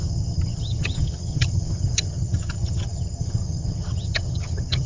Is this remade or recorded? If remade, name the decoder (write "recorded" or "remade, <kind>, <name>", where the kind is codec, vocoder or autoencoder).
remade, vocoder, HiFi-GAN